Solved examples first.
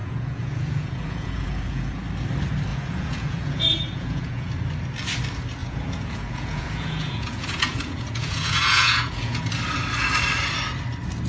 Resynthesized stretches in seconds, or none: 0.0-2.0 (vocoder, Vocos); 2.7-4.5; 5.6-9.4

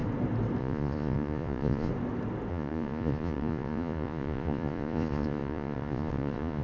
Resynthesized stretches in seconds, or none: 0.6-1.9 (vocoder, Vocos); 2.5-6.6

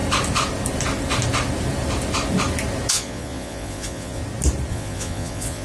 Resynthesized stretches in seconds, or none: 2.9-4.2 (vocoder, Vocos); 4.7-5.6

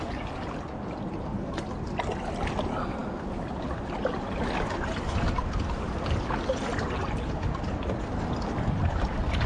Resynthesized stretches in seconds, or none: none

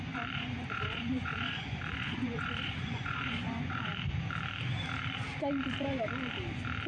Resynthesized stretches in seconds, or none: 0.0-3.9 (vocoder, Vocos)

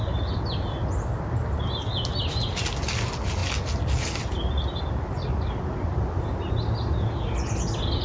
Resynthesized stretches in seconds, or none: none